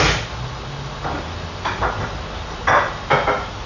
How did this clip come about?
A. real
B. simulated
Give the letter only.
A